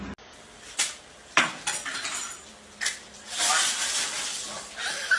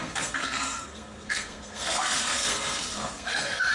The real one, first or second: first